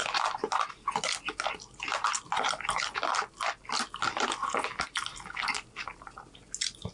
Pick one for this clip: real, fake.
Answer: real